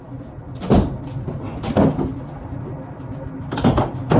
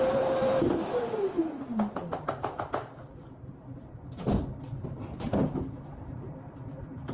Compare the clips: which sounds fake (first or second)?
second